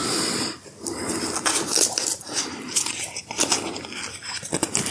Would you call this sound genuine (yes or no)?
yes